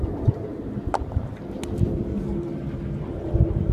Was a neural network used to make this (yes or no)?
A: no